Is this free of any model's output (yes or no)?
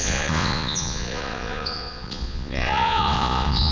no